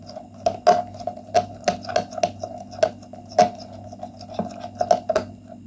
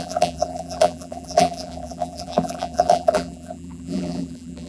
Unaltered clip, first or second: first